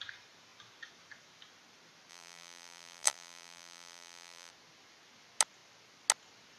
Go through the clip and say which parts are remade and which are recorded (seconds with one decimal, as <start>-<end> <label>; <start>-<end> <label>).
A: 0.0-2.1 recorded; 2.1-4.5 remade; 4.5-6.6 recorded